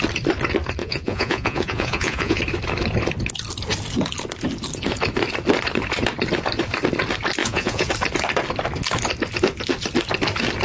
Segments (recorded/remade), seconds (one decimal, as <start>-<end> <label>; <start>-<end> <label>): 0.0-0.8 recorded; 0.8-2.4 remade; 2.4-7.4 recorded; 7.4-7.9 remade; 7.9-10.6 recorded